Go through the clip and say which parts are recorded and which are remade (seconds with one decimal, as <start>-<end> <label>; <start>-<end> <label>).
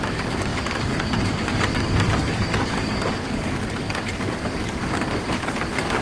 0.0-6.0 remade